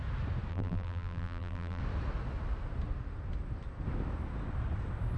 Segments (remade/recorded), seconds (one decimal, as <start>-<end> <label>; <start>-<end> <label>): 0.0-0.5 recorded; 0.5-1.8 remade; 1.8-5.2 recorded